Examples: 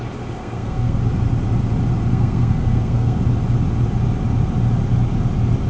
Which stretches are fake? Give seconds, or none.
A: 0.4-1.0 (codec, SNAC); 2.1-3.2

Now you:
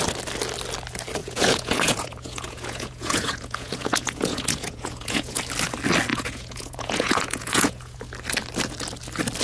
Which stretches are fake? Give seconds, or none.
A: 1.2-5.4 (vocoder, Vocos); 6.1-8.0